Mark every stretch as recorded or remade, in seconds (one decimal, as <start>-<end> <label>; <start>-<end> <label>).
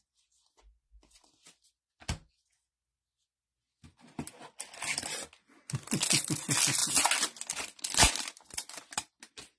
0.0-9.6 recorded